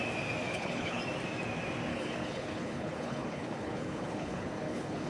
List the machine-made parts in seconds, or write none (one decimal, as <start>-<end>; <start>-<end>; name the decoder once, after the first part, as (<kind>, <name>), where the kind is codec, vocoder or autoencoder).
0.5-1.0 (codec, HILCodec); 1.9-5.1

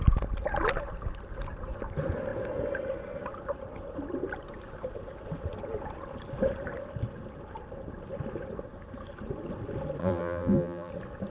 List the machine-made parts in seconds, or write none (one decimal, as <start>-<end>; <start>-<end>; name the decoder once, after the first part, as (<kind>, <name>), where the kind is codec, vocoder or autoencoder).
10.0-10.9 (vocoder, BigVGAN v2)